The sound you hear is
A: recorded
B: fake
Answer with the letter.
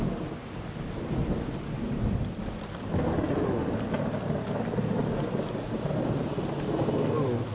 A